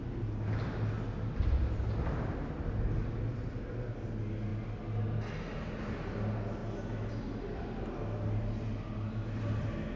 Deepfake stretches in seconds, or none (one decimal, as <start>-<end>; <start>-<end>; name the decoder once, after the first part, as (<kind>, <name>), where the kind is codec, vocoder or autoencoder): none

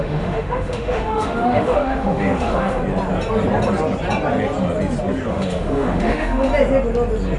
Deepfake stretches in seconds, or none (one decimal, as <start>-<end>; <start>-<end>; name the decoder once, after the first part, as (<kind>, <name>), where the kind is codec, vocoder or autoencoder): 0.0-2.8 (autoencoder, DAC-VAE); 5.3-6.5

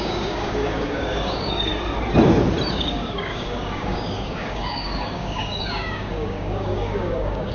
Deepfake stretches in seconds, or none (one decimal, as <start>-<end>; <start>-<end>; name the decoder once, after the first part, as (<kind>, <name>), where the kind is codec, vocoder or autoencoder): 0.0-1.7 (codec, DAC); 2.7-7.5